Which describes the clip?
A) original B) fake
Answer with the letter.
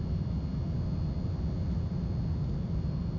A